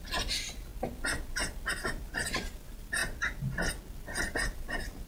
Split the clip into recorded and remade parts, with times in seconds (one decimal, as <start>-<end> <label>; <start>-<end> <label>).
0.0-0.7 remade; 0.7-1.7 recorded; 1.7-3.0 remade; 3.0-3.9 recorded; 3.9-5.1 remade